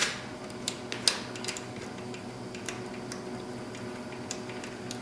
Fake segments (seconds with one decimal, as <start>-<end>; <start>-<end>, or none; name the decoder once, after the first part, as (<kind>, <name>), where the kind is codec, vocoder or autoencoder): none